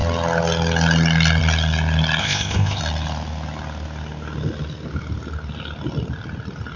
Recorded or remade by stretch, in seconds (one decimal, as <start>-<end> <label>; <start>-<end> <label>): 0.0-2.2 recorded; 2.2-2.8 remade; 2.8-6.8 recorded